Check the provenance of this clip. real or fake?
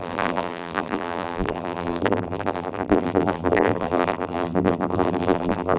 fake